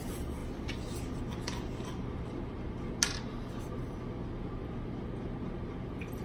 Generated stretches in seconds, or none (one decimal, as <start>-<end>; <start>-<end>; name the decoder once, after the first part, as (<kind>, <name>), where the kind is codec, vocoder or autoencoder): none